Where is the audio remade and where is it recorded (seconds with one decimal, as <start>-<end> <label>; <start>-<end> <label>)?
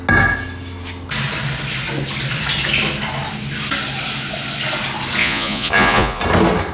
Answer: 0.0-5.2 recorded; 5.2-6.2 remade; 6.2-6.7 recorded